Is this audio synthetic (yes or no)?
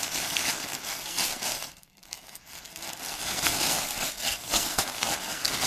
yes